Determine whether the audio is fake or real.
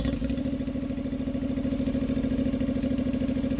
real